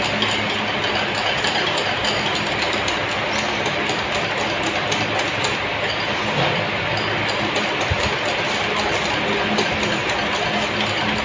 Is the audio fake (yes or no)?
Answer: no